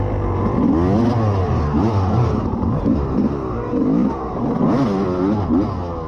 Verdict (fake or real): real